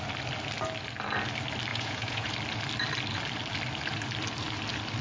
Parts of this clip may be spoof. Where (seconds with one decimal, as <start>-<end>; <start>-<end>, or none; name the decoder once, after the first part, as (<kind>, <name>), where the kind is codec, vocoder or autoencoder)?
1.7-2.3 (vocoder, Vocos)